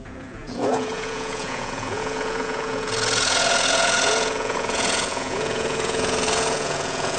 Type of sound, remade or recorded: remade